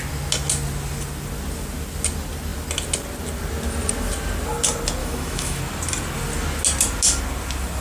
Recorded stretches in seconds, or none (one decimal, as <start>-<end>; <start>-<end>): 0.0-5.0; 5.6-7.8